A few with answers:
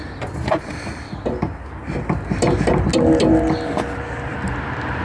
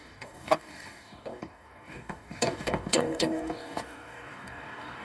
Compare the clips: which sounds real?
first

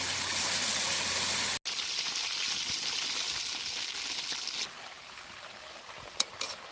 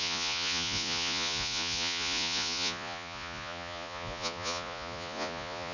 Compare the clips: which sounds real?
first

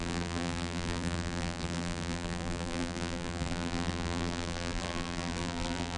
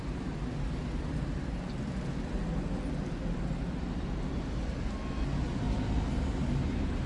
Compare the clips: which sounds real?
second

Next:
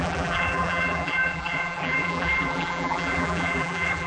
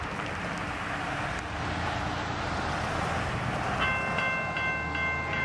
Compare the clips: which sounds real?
second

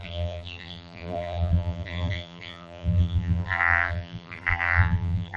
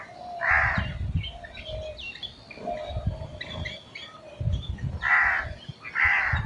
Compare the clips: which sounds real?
second